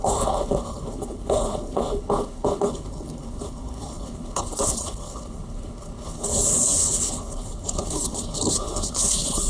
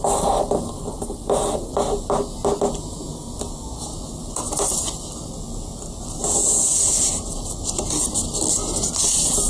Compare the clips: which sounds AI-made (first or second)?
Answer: first